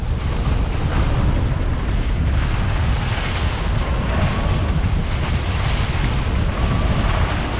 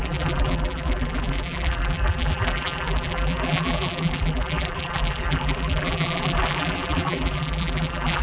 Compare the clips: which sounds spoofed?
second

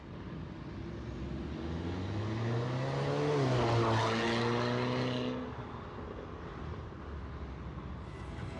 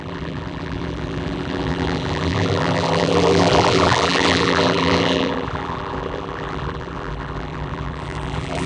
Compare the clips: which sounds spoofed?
second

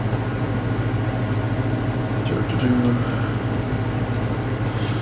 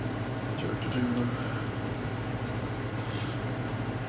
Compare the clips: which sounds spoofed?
second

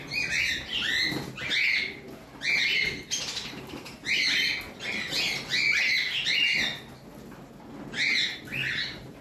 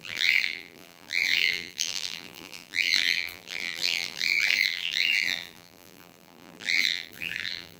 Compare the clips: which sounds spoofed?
second